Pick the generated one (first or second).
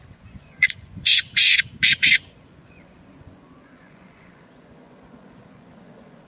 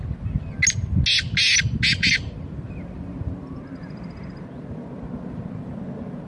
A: first